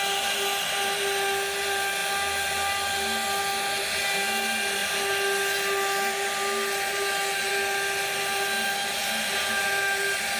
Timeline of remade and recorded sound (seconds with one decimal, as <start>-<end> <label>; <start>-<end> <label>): 0.0-10.4 recorded